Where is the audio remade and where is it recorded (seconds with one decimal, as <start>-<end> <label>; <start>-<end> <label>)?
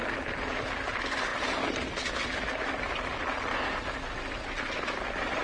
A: 0.0-5.4 recorded